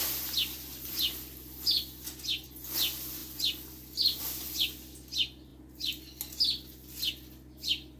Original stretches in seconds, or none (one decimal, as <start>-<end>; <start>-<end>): 0.0-0.7; 1.8-8.0